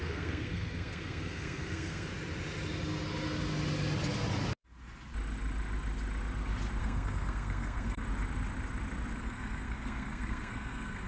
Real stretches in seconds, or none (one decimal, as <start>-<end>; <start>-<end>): 2.1-6.8; 8.0-9.2